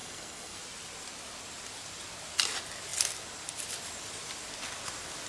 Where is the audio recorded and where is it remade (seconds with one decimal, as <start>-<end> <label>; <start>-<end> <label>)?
0.0-0.6 remade; 0.6-5.3 recorded